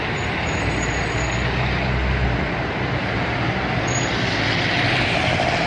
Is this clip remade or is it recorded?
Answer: recorded